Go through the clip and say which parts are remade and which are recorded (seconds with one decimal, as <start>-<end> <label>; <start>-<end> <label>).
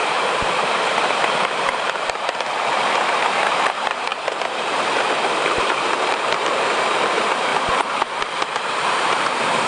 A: 0.0-9.7 remade